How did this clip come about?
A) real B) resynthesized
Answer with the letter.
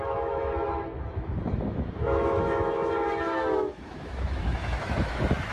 B